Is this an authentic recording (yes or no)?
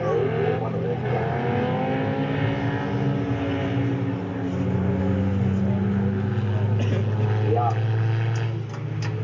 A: yes